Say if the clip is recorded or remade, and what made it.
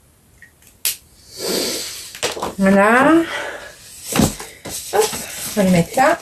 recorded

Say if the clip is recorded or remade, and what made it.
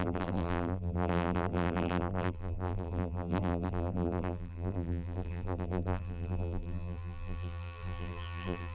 remade, vocoder, BigVGAN v2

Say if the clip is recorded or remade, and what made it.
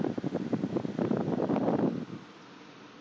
recorded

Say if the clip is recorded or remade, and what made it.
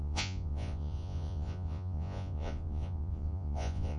remade, vocoder, Vocos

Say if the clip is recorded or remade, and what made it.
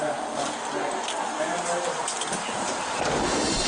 recorded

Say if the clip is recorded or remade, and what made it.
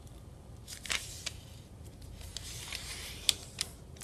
remade, vocoder, BigVGAN v2